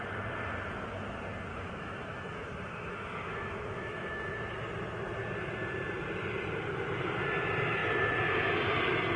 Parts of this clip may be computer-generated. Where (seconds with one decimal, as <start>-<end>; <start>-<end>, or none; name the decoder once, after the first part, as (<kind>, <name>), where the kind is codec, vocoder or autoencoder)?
1.5-4.3 (autoencoder, DAC-VAE)